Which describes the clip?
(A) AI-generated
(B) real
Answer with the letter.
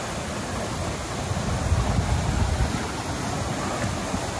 B